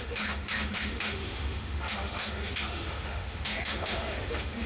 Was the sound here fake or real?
fake